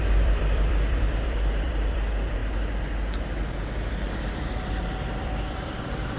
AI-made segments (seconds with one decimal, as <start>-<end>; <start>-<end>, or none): 0.0-2.4; 4.2-6.2